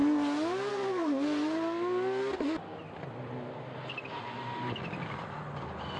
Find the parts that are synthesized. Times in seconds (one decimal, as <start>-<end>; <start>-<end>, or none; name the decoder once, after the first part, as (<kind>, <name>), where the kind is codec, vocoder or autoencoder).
none